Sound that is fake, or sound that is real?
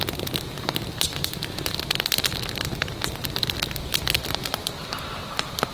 real